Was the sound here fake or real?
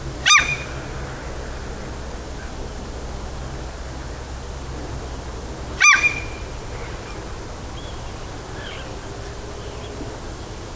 real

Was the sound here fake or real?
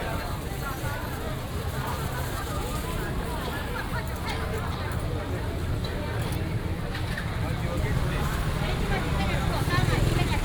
real